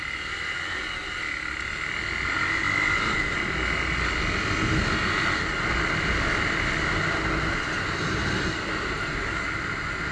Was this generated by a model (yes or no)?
no